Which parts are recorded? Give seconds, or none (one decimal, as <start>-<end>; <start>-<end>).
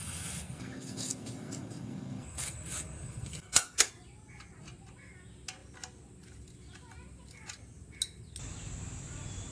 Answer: 3.9-9.5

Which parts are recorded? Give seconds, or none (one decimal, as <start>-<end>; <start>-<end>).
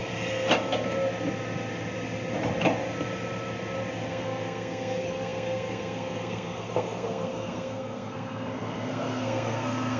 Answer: 0.0-4.1